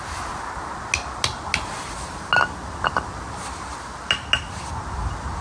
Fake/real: real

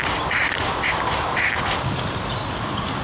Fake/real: real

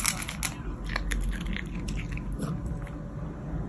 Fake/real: real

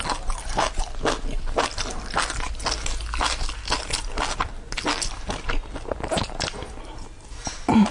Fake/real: real